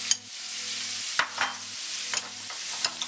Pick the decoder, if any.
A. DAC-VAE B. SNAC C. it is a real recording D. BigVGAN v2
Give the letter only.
C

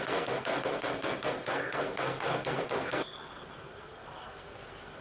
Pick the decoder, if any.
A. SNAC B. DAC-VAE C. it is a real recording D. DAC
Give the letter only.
A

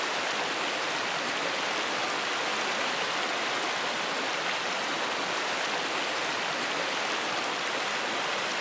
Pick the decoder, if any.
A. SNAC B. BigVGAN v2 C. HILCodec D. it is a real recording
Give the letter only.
D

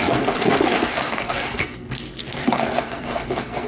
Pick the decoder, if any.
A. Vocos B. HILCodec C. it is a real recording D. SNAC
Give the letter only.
D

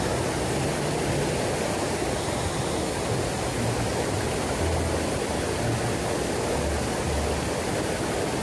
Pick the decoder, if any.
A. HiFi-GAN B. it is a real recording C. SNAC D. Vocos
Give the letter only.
B